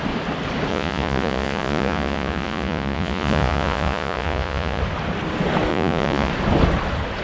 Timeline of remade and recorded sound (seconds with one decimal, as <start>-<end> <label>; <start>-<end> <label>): 0.0-0.7 recorded; 0.7-4.8 remade; 4.8-5.7 recorded; 5.7-6.3 remade; 6.3-7.2 recorded